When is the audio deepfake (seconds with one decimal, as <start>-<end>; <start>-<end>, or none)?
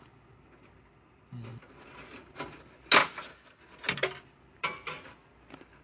none